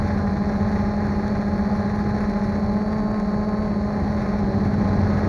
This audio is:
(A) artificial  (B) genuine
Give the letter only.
B